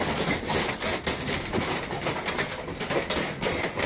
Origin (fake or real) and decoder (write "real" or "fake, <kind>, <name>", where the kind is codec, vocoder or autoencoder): fake, vocoder, BigVGAN v2